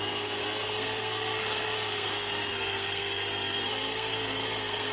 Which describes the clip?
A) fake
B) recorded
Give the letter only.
A